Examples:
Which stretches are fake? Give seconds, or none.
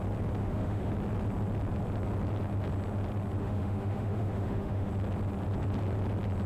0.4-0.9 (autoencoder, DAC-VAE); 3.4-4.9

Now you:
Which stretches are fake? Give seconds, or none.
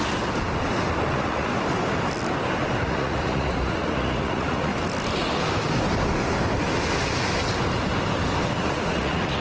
1.1-1.5 (vocoder, Vocos); 2.8-4.7; 8.6-9.4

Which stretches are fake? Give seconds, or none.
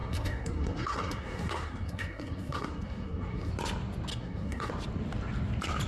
0.0-3.5 (codec, SNAC); 4.1-4.7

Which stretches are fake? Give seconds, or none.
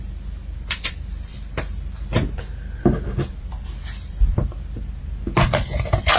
0.0-6.2 (vocoder, BigVGAN v2)